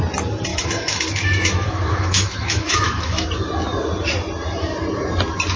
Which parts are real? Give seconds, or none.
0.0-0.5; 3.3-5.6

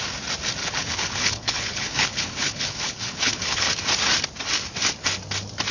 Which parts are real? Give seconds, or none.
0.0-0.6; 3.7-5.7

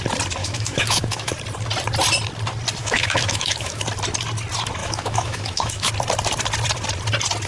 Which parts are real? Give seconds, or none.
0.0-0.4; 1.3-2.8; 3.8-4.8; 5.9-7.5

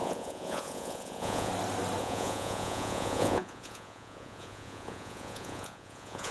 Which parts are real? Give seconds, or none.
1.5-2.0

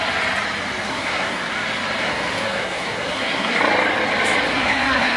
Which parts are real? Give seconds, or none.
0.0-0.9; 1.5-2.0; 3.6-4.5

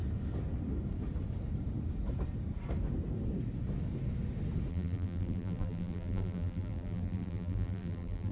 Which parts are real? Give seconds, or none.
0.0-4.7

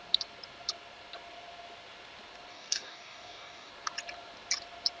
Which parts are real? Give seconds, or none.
0.0-2.5; 3.7-5.0

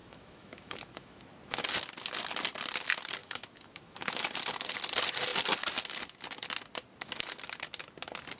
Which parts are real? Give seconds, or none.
1.2-3.2; 4.2-8.4